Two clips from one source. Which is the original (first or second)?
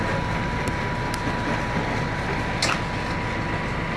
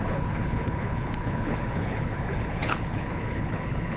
first